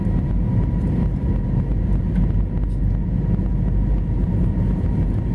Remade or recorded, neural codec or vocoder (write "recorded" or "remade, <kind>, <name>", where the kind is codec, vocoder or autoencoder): recorded